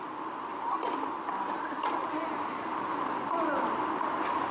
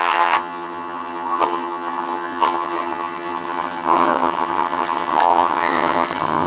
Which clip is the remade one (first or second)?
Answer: second